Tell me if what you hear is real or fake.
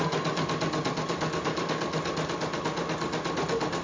real